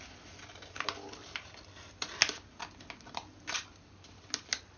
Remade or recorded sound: recorded